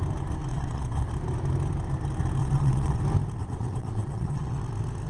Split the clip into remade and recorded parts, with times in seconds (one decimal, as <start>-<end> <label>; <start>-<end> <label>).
0.0-0.5 recorded; 0.5-1.1 remade; 1.1-2.4 recorded; 2.4-3.0 remade; 3.0-3.4 recorded; 3.4-4.6 remade; 4.6-5.1 recorded